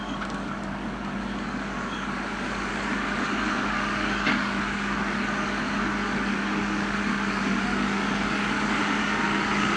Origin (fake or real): fake